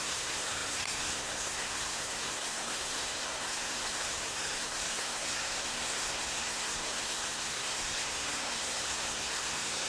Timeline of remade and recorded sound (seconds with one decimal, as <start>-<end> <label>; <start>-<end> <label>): 0.0-9.9 remade